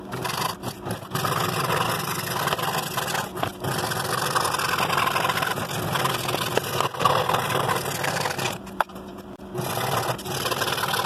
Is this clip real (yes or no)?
yes